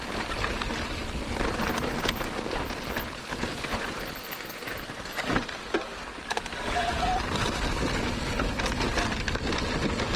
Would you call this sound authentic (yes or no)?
yes